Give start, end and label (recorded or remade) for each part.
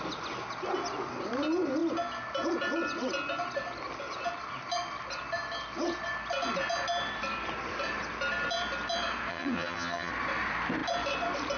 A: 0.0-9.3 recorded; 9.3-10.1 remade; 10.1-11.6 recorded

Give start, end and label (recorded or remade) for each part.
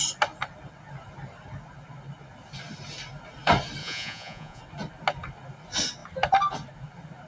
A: 0.0-3.8 recorded; 3.8-4.6 remade; 4.6-7.3 recorded